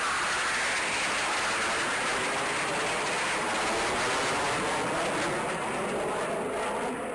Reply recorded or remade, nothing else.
recorded